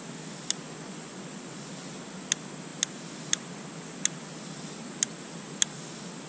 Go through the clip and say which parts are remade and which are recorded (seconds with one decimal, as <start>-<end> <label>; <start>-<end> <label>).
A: 0.0-0.6 recorded; 0.6-1.7 remade; 1.7-6.3 recorded